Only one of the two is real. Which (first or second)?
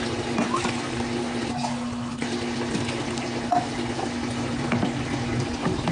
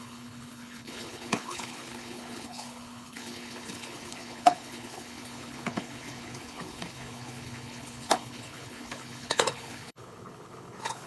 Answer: first